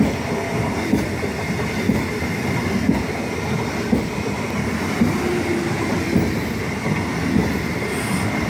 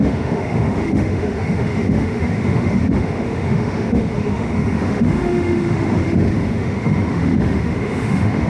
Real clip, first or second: first